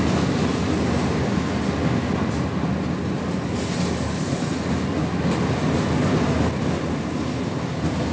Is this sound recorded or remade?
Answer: recorded